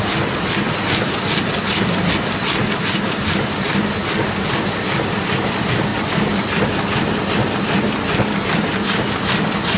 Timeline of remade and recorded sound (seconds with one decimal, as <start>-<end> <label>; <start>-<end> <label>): 0.0-9.8 recorded